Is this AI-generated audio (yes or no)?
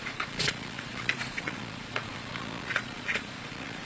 yes